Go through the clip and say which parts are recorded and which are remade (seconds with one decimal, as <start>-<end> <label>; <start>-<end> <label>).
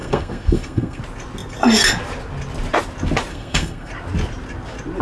0.0-1.0 remade; 1.0-3.3 recorded; 3.3-3.9 remade; 3.9-5.0 recorded